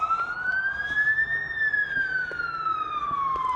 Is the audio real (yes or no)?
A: yes